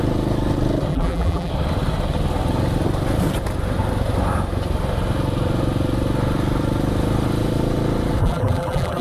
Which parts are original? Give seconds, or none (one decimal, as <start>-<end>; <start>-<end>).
0.0-0.9; 1.5-8.2